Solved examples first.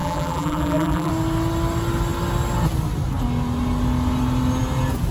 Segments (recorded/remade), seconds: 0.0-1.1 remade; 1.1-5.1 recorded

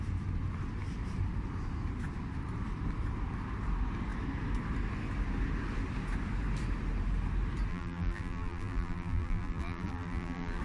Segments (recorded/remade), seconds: 0.0-7.7 recorded; 7.7-10.6 remade

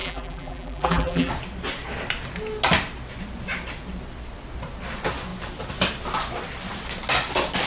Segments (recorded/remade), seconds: 0.0-1.3 remade; 1.3-7.7 recorded